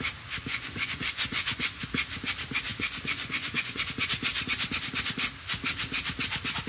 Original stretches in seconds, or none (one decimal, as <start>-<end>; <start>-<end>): 0.0-0.5; 1.8-2.7; 3.9-6.7